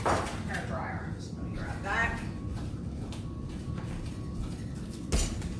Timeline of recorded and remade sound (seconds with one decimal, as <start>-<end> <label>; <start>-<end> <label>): 0.0-5.6 recorded